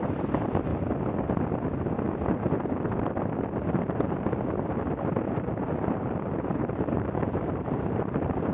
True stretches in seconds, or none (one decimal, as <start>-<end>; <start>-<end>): 0.7-3.7